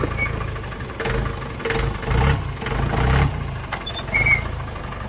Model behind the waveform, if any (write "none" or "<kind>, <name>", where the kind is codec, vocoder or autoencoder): none